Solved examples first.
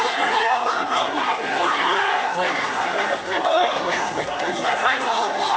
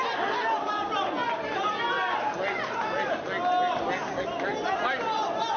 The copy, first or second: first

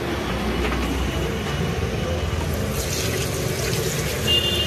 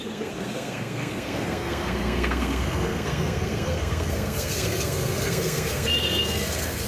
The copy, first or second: second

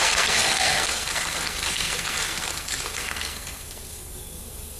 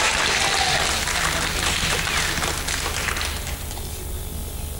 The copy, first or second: first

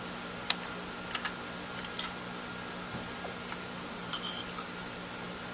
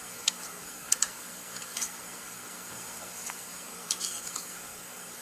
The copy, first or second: second